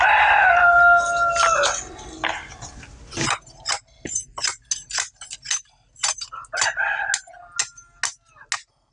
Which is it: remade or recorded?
recorded